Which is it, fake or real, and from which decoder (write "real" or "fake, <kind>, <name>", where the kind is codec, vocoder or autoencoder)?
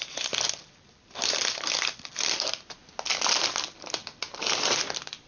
fake, vocoder, BigVGAN v2